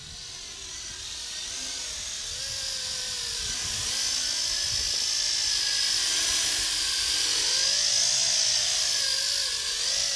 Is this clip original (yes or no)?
yes